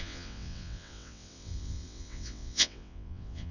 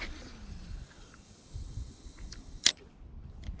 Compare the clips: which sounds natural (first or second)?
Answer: second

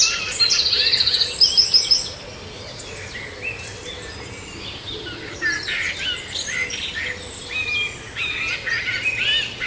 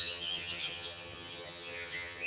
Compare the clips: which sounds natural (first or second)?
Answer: first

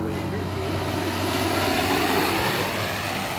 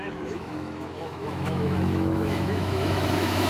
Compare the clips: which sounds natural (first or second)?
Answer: first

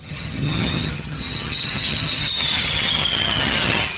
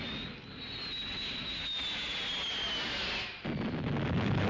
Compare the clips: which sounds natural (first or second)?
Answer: second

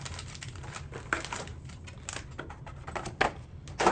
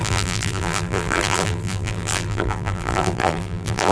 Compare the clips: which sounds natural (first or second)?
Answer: first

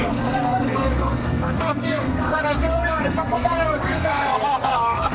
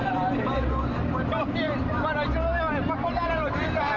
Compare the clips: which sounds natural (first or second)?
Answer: second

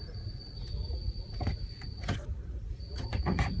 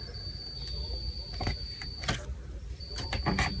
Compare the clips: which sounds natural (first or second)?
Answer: second